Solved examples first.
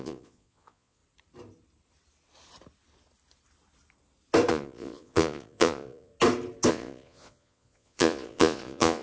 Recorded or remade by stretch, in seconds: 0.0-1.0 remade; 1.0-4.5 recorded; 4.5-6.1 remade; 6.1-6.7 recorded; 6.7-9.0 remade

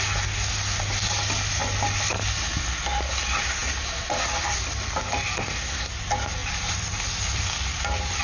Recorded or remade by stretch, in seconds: 0.0-5.4 recorded; 5.4-5.9 remade; 5.9-8.2 recorded